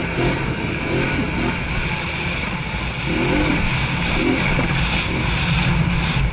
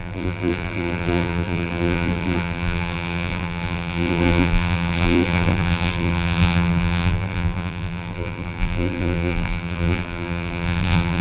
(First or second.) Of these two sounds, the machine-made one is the second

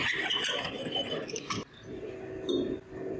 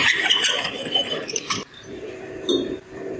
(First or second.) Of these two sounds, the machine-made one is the second